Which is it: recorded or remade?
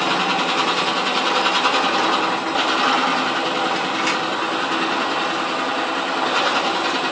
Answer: recorded